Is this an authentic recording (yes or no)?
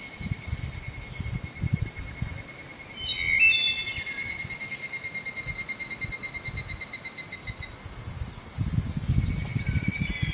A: yes